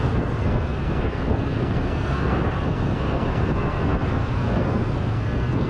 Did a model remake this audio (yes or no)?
yes